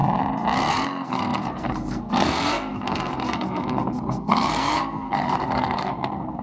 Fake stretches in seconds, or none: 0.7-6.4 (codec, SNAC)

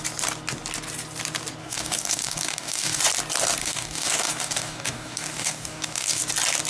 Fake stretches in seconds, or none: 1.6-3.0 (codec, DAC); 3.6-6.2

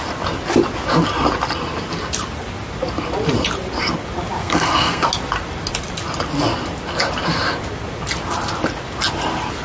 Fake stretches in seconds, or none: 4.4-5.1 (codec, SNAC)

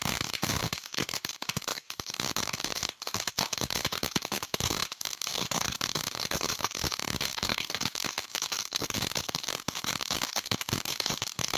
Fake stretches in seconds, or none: 0.0-11.6 (codec, DAC)

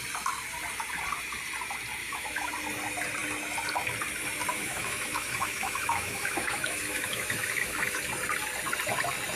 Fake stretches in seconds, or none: 2.0-2.5 (autoencoder, DAC-VAE); 4.5-8.1